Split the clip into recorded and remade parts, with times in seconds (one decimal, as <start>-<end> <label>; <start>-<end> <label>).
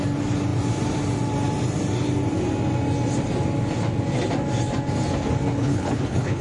0.0-5.6 recorded; 5.6-6.4 remade